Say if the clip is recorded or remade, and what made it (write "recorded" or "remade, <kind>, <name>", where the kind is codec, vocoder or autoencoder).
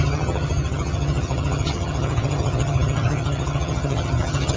remade, vocoder, HiFi-GAN